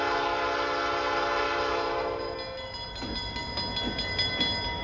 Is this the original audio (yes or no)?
yes